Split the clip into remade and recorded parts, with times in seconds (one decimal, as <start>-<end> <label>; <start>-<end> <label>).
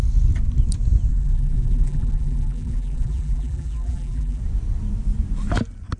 0.0-1.1 recorded; 1.1-4.4 remade; 4.4-6.0 recorded